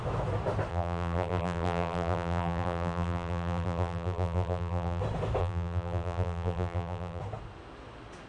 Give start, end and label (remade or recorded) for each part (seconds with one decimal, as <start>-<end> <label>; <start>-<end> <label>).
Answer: 0.0-0.7 recorded; 0.7-5.0 remade; 5.0-5.4 recorded; 5.4-7.2 remade; 7.2-8.3 recorded